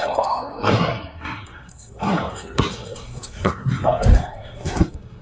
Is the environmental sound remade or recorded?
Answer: remade